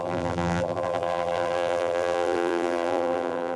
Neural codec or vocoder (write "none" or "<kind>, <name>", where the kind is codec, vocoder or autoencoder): vocoder, BigVGAN v2